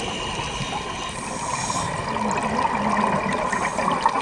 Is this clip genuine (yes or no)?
yes